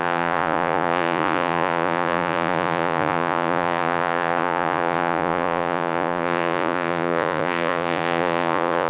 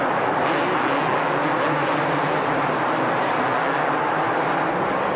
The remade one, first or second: first